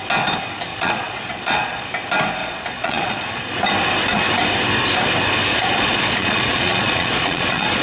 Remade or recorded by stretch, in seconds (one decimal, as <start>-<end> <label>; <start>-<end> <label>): 0.0-0.7 recorded; 0.7-1.9 remade; 1.9-2.4 recorded; 2.4-3.4 remade; 3.4-5.5 recorded; 5.5-7.8 remade